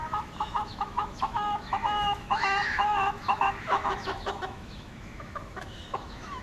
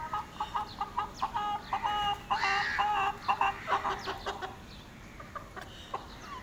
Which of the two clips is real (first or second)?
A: second